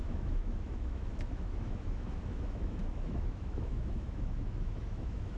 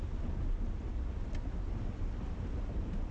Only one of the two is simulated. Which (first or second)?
first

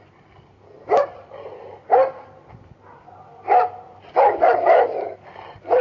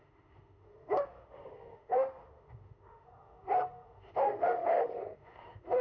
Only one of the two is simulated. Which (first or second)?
second